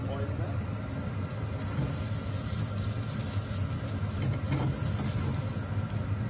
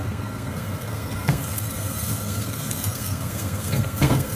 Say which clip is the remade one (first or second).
second